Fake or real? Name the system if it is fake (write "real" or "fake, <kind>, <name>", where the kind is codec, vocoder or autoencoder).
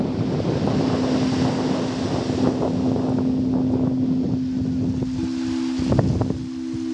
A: real